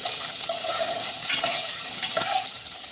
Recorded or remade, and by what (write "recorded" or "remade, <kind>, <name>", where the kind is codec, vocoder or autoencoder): remade, vocoder, HiFi-GAN